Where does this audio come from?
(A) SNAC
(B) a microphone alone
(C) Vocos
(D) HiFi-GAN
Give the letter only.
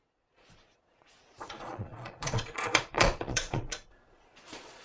C